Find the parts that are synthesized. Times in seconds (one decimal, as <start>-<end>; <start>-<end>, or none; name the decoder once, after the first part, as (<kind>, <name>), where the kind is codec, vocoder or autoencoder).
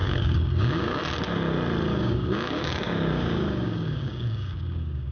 0.0-1.0 (codec, DAC); 1.9-5.1